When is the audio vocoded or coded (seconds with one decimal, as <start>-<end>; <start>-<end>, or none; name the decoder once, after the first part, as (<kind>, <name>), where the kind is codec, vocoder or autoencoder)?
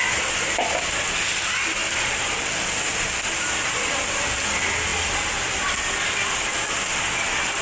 1.8-4.2 (vocoder, BigVGAN v2)